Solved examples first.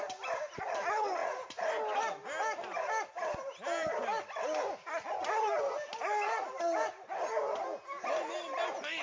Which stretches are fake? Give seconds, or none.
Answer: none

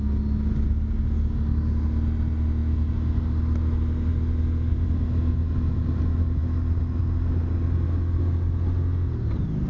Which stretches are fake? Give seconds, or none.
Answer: none

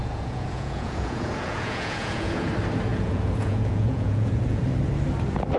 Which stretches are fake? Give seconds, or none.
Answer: 0.0-2.5 (vocoder, Vocos); 2.9-4.6

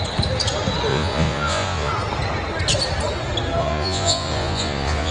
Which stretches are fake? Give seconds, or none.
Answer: 0.9-1.9 (vocoder, Vocos); 3.6-5.1